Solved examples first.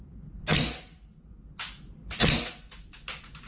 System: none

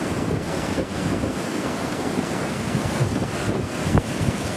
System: codec, SNAC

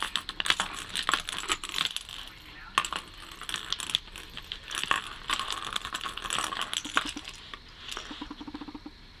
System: none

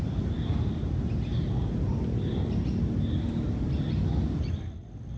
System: none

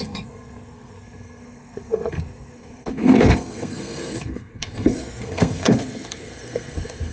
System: codec, SNAC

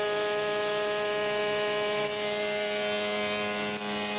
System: none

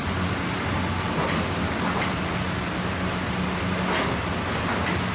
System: none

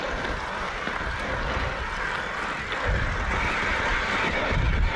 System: none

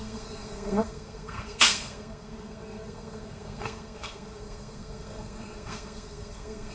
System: codec, SNAC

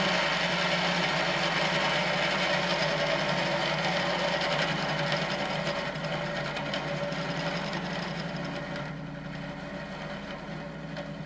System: none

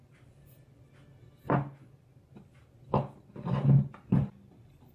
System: none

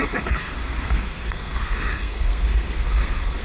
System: codec, SNAC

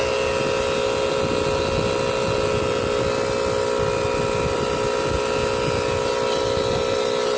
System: none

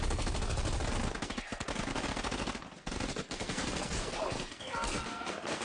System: codec, SNAC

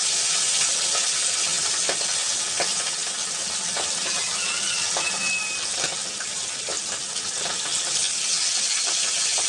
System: none